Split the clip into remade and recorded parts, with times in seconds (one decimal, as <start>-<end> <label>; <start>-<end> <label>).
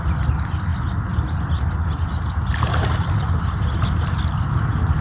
0.0-5.0 recorded